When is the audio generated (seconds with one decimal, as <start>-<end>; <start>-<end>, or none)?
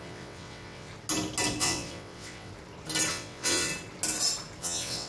0.0-0.9; 1.6-2.5; 3.1-3.7; 4.6-5.1